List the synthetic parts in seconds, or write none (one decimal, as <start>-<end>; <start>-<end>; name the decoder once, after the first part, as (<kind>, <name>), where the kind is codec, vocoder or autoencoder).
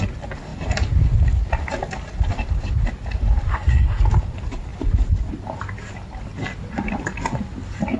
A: 3.5-4.0 (codec, SNAC)